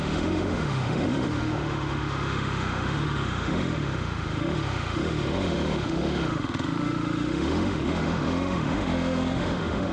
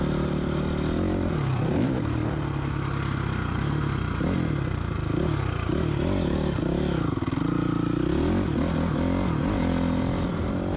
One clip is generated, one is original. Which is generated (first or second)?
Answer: first